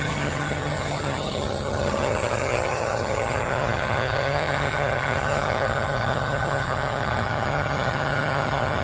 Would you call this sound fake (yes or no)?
yes